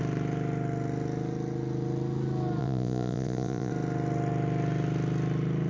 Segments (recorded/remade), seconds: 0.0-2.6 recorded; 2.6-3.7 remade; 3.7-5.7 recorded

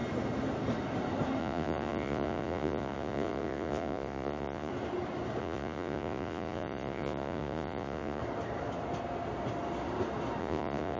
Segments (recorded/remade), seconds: 0.0-1.4 recorded; 1.4-4.7 remade; 4.7-5.4 recorded; 5.4-8.2 remade; 8.2-10.4 recorded; 10.4-11.0 remade

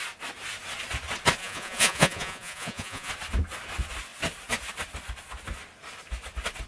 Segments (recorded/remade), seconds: 0.0-1.4 recorded; 1.4-3.1 remade; 3.1-6.7 recorded

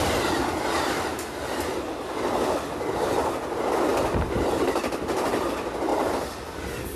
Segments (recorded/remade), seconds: 0.0-3.9 recorded; 3.9-5.0 remade; 5.0-5.9 recorded; 5.9-7.0 remade

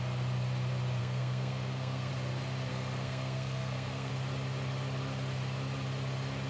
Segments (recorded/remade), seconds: 0.0-1.0 recorded; 1.0-2.1 remade; 2.1-2.7 recorded; 2.7-4.1 remade; 4.1-6.5 recorded